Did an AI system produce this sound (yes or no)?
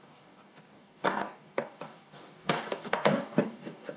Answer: yes